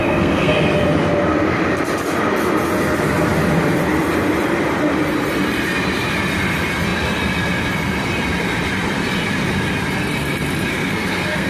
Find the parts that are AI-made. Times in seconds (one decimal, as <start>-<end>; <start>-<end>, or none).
0.0-0.6; 10.7-11.5